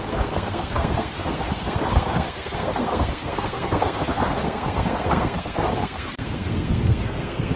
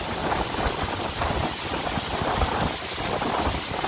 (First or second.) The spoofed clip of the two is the first